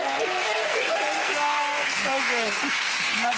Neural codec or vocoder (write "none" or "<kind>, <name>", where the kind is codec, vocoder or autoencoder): codec, SNAC